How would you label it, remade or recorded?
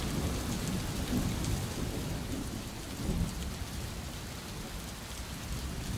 recorded